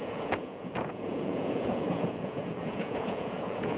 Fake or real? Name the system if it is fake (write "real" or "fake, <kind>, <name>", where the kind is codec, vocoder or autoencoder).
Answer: fake, vocoder, Vocos